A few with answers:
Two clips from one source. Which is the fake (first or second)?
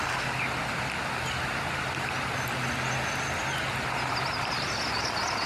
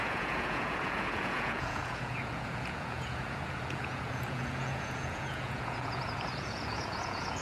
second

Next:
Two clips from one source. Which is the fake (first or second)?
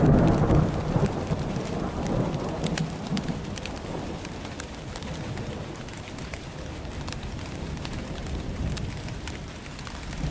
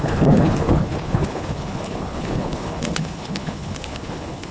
second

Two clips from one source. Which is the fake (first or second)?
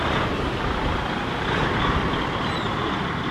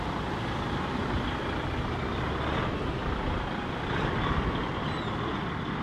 first